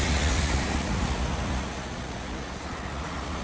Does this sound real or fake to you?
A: fake